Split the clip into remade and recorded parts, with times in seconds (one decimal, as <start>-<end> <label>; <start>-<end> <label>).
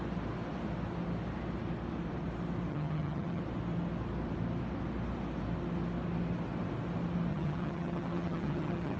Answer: 0.0-2.7 recorded; 2.7-3.4 remade; 3.4-7.3 recorded; 7.3-9.0 remade